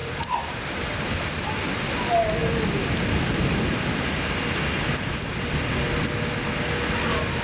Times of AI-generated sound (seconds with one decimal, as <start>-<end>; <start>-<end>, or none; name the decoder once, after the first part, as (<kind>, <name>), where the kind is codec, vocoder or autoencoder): none